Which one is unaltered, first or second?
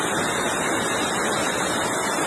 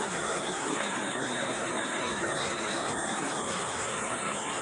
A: first